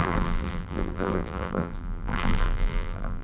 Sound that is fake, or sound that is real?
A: fake